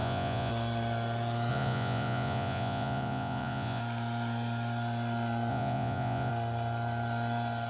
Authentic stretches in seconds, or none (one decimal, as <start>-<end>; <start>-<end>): 0.5-1.5; 3.8-5.5; 6.3-7.7